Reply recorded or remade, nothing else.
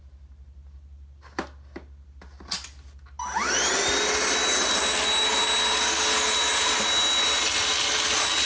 recorded